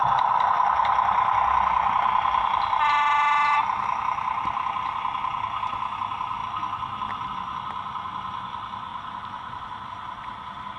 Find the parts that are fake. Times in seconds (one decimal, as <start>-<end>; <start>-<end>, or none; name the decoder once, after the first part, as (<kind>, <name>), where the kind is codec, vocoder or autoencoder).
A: none